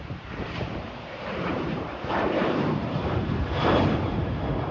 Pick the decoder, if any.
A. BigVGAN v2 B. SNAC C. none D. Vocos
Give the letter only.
A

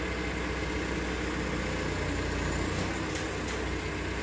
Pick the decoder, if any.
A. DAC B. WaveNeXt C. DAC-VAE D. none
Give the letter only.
D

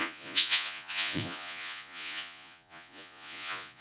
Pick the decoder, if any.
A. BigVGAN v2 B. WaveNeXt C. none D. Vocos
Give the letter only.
D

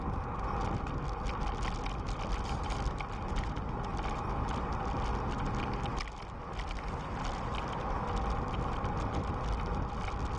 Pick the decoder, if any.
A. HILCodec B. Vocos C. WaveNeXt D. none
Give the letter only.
D